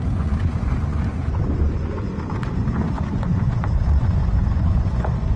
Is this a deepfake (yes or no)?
yes